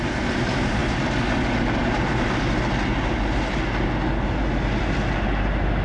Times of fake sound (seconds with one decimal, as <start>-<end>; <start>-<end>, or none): none